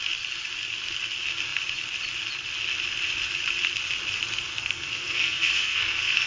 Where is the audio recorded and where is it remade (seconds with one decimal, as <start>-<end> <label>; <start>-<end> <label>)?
0.0-4.5 recorded; 4.5-6.3 remade